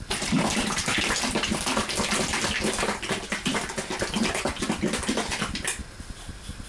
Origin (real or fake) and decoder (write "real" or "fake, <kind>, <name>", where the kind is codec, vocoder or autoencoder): real